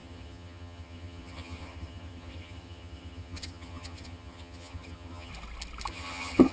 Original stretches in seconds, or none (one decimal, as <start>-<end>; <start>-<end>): 5.3-5.9